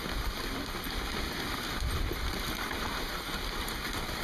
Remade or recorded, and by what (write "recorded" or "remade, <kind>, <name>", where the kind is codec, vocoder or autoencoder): recorded